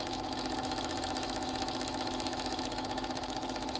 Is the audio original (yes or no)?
no